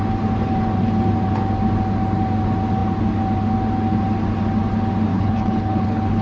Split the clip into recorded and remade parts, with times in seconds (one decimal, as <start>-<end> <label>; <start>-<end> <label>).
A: 0.0-5.1 recorded; 5.1-6.2 remade

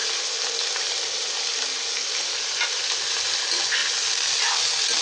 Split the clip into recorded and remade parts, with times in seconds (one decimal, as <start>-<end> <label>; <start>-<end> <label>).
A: 0.0-3.0 remade; 3.0-3.8 recorded; 3.8-5.0 remade

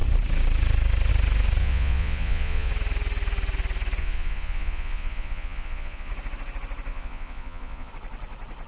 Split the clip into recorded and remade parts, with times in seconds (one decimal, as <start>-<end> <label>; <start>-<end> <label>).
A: 0.0-1.6 recorded; 1.6-2.7 remade; 2.7-4.0 recorded; 4.0-6.1 remade; 6.1-6.9 recorded; 6.9-7.9 remade; 7.9-8.7 recorded

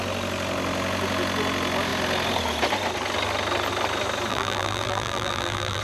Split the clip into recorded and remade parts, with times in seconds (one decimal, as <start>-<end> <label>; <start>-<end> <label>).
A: 0.0-4.3 recorded; 4.3-5.8 remade

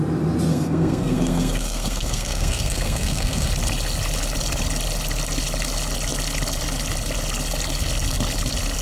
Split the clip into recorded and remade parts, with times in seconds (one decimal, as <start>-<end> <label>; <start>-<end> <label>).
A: 0.0-0.5 recorded; 0.5-3.5 remade; 3.5-8.8 recorded

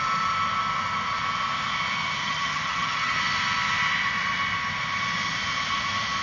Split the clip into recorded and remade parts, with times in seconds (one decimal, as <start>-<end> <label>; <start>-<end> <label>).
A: 0.0-2.2 recorded; 2.2-3.2 remade; 3.2-6.2 recorded

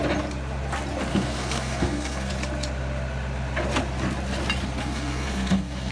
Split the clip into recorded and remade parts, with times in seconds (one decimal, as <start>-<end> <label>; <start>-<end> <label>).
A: 0.0-1.1 recorded; 1.1-2.3 remade; 2.3-4.8 recorded; 4.8-5.9 remade